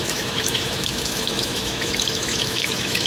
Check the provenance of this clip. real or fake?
fake